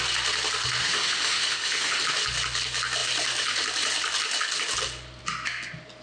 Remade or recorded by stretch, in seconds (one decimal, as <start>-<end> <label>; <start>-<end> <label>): 0.0-0.8 recorded; 0.8-2.0 remade; 2.0-6.0 recorded